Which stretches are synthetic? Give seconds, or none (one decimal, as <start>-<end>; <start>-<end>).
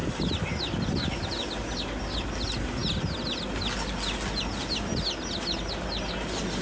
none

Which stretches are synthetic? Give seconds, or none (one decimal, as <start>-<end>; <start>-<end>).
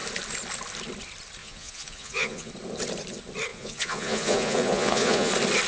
1.4-2.5; 3.5-5.3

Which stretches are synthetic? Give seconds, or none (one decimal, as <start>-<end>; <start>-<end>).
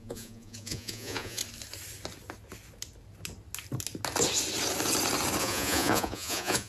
0.0-1.4; 5.4-6.7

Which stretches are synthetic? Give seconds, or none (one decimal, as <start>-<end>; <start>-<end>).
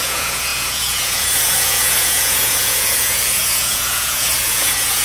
0.0-5.0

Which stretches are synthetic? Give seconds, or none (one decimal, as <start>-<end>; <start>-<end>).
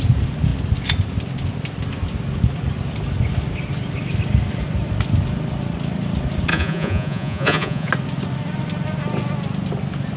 6.5-7.9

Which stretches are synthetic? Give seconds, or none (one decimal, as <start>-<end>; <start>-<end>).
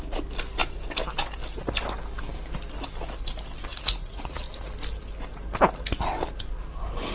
3.7-4.4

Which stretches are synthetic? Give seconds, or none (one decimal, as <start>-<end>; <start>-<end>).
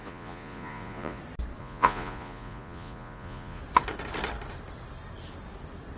0.0-1.2; 1.6-3.6